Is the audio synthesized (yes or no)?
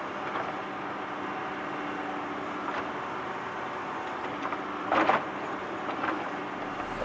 no